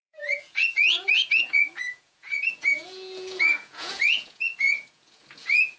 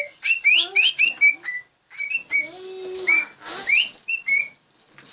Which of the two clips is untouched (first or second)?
second